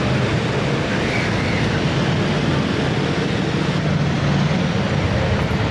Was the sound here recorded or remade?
recorded